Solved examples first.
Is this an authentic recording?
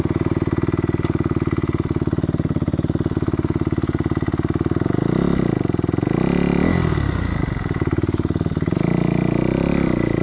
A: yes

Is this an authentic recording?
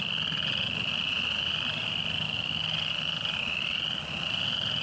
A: yes